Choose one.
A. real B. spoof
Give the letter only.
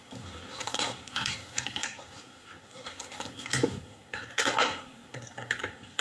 B